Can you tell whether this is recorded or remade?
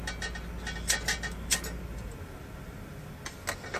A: recorded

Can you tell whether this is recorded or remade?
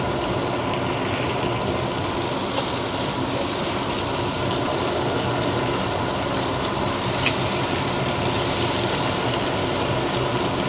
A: recorded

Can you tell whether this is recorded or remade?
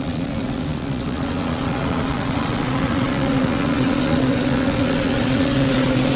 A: remade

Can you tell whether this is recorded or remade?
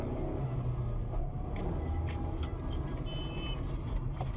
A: recorded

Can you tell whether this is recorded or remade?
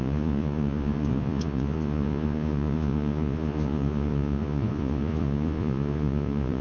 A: remade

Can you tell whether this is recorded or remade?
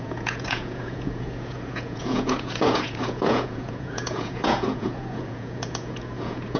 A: remade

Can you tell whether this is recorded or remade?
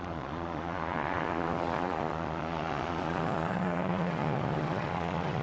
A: remade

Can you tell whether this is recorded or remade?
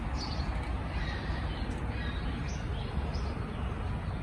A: recorded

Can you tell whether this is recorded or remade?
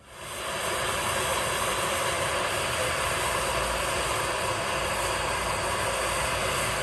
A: recorded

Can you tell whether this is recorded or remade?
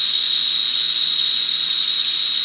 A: remade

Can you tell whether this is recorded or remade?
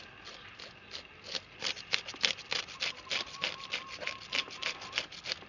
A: recorded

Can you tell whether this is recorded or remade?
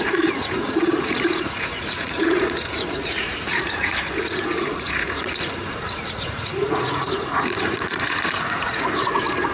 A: remade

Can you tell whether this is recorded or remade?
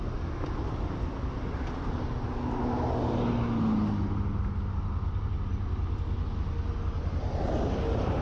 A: recorded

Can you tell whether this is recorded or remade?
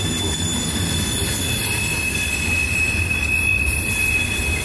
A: recorded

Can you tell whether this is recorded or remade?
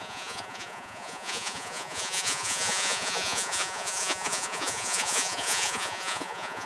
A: remade